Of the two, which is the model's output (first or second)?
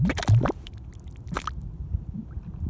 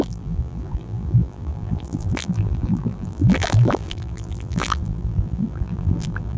second